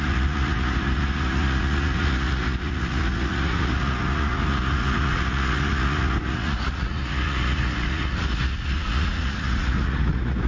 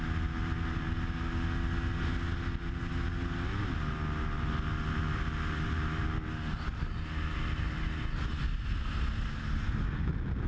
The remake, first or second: first